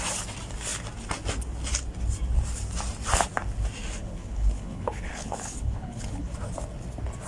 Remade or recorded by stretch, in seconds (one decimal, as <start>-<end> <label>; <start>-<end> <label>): 0.0-4.0 recorded; 4.0-6.4 remade; 6.4-7.3 recorded